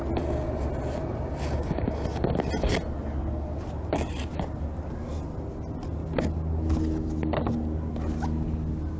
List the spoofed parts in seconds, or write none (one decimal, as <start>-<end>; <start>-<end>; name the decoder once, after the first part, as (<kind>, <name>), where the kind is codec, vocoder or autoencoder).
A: none